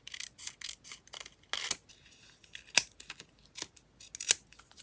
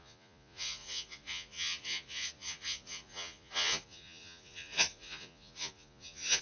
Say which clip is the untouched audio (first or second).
first